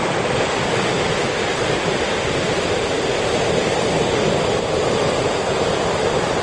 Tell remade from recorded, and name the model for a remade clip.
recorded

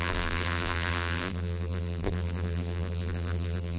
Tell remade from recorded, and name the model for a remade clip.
remade, vocoder, BigVGAN v2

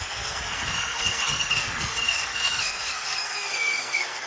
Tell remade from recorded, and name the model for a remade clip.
remade, codec, SNAC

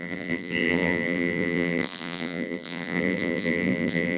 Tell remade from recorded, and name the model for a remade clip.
remade, vocoder, BigVGAN v2